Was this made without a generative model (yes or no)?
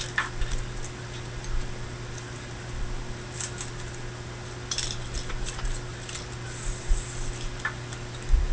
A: yes